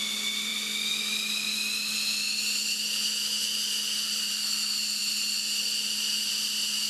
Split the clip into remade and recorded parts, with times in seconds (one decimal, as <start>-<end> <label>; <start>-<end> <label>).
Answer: 0.0-6.9 recorded